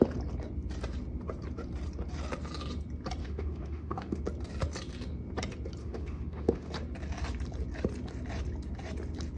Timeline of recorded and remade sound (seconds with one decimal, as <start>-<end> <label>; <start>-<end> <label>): 0.0-3.2 recorded; 3.2-4.2 remade; 4.2-5.8 recorded; 5.8-6.7 remade; 6.7-9.4 recorded

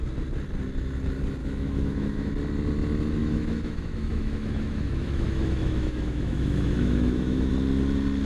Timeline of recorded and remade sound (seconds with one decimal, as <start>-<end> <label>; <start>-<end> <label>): 0.0-1.4 recorded; 1.4-2.3 remade; 2.3-3.2 recorded; 3.2-7.5 remade; 7.5-8.3 recorded

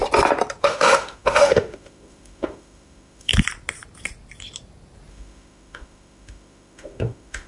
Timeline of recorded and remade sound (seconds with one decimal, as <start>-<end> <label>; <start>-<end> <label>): 0.0-0.6 recorded; 0.6-3.3 remade; 3.3-5.1 recorded; 5.1-7.5 remade

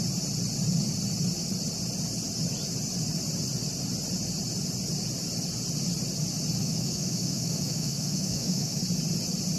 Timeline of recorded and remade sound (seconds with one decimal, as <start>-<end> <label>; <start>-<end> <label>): 0.0-6.6 recorded; 6.6-8.8 remade; 8.8-9.6 recorded

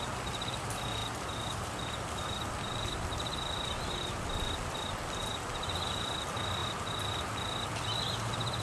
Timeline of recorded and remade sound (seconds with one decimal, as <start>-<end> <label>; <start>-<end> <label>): 0.0-8.6 recorded

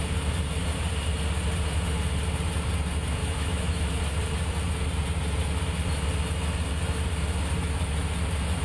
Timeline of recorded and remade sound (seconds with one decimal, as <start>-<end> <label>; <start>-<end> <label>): 0.0-3.2 recorded; 3.2-3.9 remade; 3.9-8.6 recorded